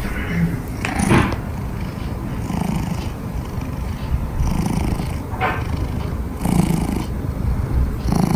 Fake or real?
real